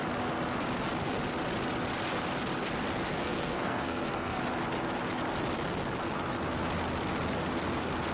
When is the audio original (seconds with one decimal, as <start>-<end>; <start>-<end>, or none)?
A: 0.0-3.2; 4.4-8.1

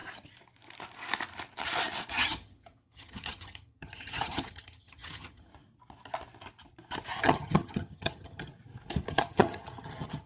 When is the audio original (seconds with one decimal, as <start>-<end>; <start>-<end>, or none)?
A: 0.0-2.1; 5.5-7.2; 8.5-9.1